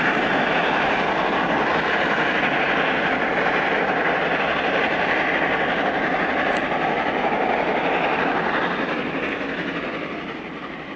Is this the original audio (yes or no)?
yes